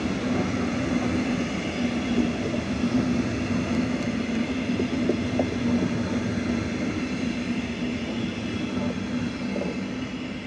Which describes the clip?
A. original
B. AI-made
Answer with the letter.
A